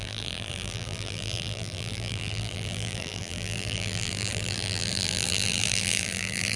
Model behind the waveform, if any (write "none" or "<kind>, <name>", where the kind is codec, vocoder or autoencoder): vocoder, BigVGAN v2